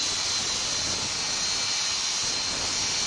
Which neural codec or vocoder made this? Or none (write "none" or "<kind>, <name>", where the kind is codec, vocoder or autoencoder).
none